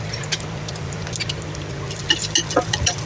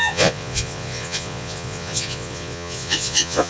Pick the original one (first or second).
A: first